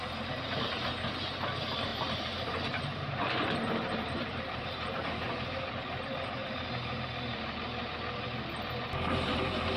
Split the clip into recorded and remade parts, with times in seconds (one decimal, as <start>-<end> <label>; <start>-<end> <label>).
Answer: 0.0-1.9 recorded; 1.9-5.7 remade; 5.7-9.8 recorded